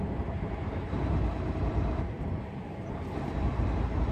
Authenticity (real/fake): fake